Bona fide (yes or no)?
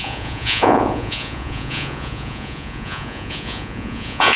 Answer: no